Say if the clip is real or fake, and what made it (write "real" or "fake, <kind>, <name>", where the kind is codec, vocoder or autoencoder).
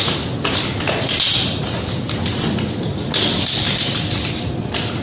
real